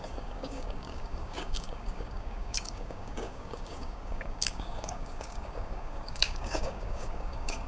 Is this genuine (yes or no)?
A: no